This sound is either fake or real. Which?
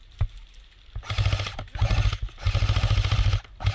real